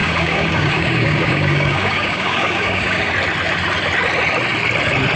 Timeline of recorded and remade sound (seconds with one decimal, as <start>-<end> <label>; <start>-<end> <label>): 0.0-3.1 remade; 3.1-5.2 recorded